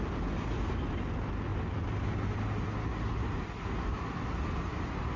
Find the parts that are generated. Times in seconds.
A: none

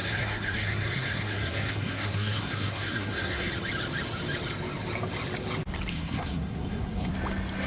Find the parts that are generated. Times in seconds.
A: 0.0-3.5 (codec, SNAC); 5.9-7.1

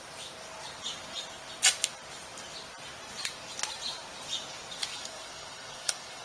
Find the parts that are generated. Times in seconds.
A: 4.9-6.2 (codec, DAC)